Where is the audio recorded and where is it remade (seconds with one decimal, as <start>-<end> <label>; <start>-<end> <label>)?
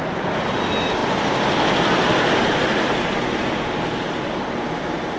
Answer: 0.0-5.2 recorded